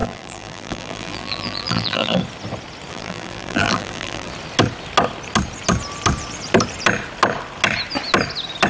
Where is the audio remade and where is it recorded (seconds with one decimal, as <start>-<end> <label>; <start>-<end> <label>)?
0.0-2.2 remade; 2.2-2.9 recorded; 2.9-4.3 remade; 4.3-8.7 recorded